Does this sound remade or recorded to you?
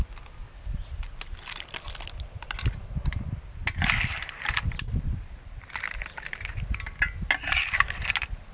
recorded